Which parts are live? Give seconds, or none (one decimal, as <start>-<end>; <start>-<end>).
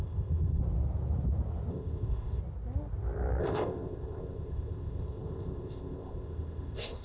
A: 0.6-1.7; 2.4-3.4